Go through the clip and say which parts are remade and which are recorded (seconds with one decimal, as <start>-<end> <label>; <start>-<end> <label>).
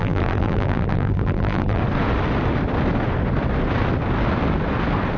0.0-1.8 remade; 1.8-5.2 recorded